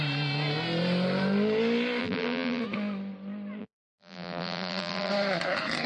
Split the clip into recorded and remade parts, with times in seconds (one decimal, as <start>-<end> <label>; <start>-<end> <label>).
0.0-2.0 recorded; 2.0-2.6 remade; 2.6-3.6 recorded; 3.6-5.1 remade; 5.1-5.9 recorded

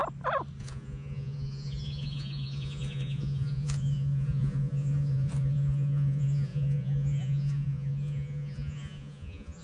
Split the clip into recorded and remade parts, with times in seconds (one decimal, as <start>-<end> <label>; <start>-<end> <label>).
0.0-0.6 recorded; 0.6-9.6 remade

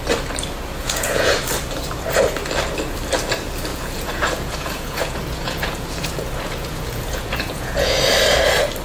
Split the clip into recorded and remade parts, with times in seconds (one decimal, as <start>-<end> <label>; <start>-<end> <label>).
0.0-0.8 recorded; 0.8-1.4 remade; 1.4-3.7 recorded; 3.7-8.0 remade; 8.0-8.8 recorded

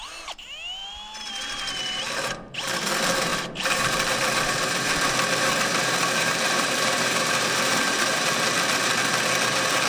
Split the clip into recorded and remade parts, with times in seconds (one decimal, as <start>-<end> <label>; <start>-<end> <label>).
0.0-0.8 recorded; 0.8-1.4 remade; 1.4-3.3 recorded; 3.3-8.1 remade; 8.1-9.9 recorded

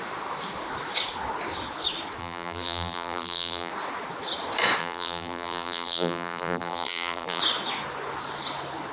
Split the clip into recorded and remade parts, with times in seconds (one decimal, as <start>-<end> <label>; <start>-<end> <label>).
0.0-2.2 recorded; 2.2-3.7 remade; 3.7-4.8 recorded; 4.8-7.4 remade; 7.4-8.9 recorded